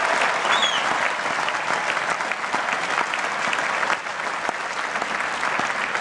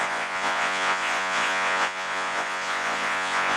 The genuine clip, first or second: first